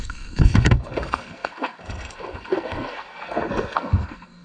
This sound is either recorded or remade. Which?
remade